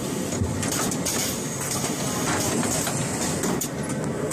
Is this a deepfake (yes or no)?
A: no